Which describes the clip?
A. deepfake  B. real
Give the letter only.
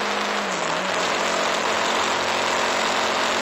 B